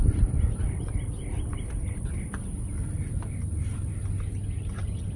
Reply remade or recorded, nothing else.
recorded